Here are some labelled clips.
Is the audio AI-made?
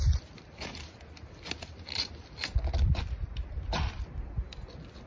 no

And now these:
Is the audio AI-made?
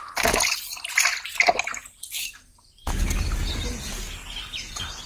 no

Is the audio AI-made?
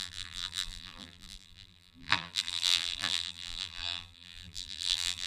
yes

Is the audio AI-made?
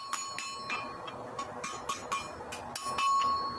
no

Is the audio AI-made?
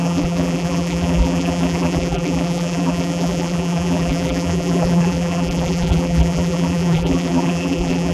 yes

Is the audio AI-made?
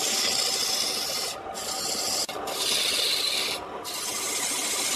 no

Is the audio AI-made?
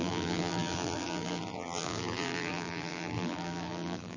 yes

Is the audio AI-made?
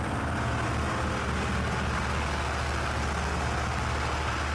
no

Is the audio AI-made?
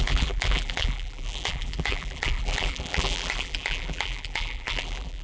yes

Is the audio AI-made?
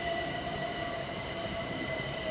yes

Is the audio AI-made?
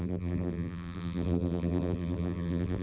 yes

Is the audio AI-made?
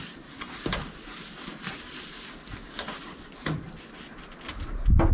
no